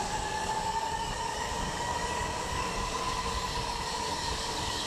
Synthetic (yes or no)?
yes